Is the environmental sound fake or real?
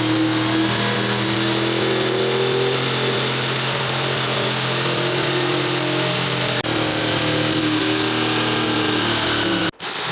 real